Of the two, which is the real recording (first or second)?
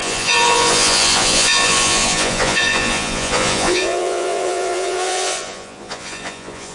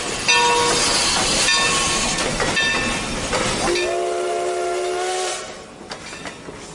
second